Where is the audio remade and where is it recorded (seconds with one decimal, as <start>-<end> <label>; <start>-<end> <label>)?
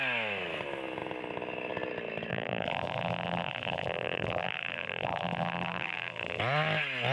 0.0-2.3 recorded; 2.3-6.4 remade; 6.4-7.1 recorded